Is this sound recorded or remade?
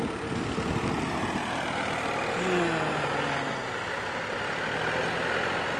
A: recorded